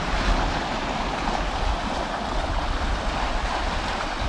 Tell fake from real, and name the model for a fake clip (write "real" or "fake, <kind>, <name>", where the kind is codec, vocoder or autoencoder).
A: real